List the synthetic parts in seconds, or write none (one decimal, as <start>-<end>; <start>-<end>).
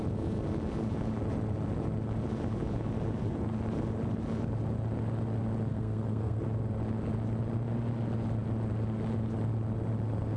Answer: 5.7-6.4